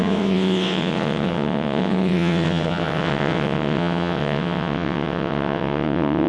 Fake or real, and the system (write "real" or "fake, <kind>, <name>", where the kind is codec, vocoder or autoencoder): fake, vocoder, WaveNeXt